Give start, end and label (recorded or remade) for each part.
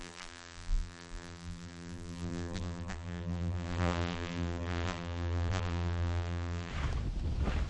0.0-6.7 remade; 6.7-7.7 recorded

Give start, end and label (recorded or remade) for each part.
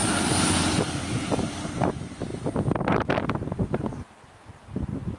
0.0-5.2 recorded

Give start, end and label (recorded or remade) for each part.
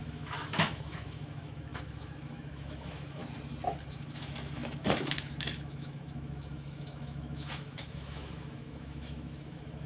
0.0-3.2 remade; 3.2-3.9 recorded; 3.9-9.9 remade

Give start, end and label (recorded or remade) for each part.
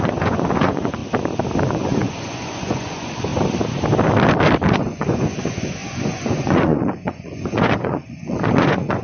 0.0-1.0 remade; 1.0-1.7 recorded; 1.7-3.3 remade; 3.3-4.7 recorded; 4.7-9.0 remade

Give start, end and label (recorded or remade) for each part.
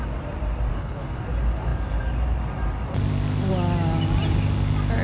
0.0-0.7 recorded; 0.7-1.2 remade; 1.2-5.0 recorded